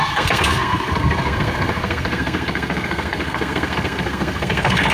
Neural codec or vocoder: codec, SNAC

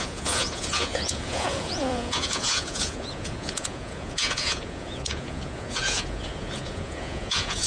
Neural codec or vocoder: vocoder, Vocos